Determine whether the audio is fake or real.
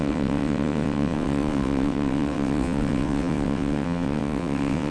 fake